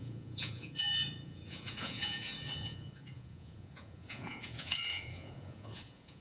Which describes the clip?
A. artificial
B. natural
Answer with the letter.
A